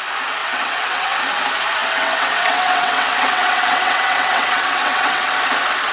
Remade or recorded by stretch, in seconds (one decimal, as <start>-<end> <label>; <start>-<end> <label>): 0.0-0.4 recorded; 0.4-1.2 remade; 1.2-1.8 recorded; 1.8-5.3 remade; 5.3-5.9 recorded